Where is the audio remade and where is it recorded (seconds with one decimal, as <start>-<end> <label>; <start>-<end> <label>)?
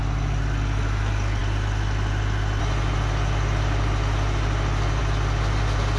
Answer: 0.0-6.0 recorded